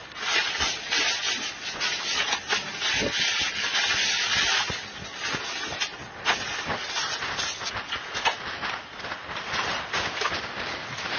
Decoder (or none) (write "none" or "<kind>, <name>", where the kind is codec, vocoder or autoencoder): none